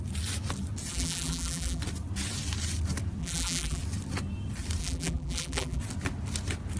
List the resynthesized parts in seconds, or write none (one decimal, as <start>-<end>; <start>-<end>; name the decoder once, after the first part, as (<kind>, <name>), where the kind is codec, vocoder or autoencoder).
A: 0.9-1.8 (vocoder, BigVGAN v2); 3.2-3.8; 4.8-5.8